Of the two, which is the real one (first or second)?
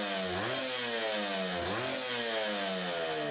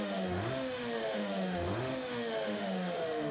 first